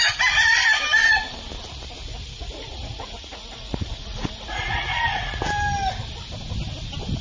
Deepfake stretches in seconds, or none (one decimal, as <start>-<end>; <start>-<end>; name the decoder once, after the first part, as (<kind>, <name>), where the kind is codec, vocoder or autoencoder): 2.1-5.4 (vocoder, Vocos)